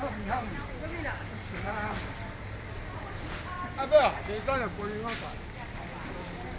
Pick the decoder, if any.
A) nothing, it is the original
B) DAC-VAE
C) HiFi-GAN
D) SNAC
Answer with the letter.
A